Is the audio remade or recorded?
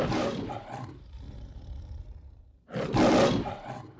remade